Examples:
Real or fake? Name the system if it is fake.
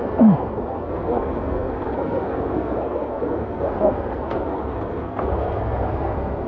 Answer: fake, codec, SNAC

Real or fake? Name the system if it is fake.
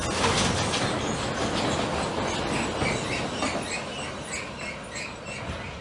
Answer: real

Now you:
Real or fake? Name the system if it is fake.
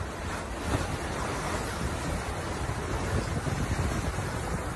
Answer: real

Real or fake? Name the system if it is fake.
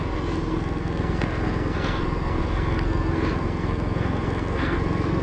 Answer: fake, codec, SNAC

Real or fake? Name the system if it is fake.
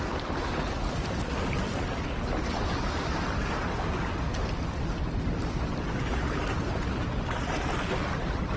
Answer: real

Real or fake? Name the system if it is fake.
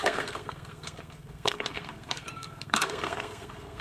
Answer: fake, codec, SNAC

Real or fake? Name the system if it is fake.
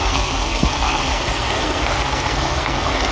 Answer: fake, codec, SNAC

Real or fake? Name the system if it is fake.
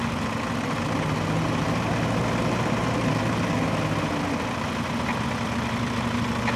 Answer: real